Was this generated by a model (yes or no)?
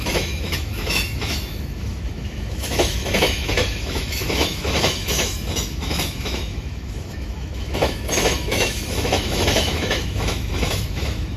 yes